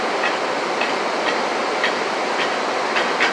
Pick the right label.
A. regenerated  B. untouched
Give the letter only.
B